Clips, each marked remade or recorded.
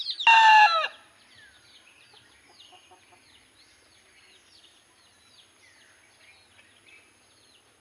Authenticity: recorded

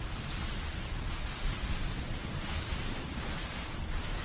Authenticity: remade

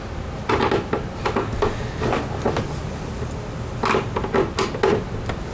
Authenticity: recorded